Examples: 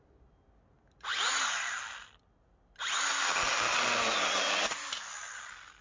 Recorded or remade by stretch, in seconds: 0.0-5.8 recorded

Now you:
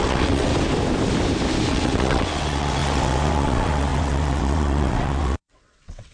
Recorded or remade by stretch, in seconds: 0.0-0.5 remade; 0.5-1.7 recorded; 1.7-6.1 remade